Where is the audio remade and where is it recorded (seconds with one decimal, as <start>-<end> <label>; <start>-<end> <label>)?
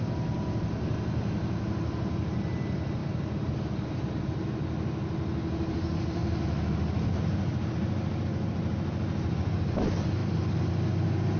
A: 0.0-11.4 recorded